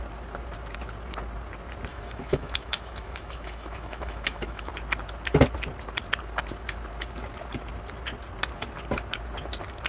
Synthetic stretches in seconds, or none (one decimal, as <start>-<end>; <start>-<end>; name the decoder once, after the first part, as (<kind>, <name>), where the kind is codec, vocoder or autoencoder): 1.9-4.7 (autoencoder, DAC-VAE)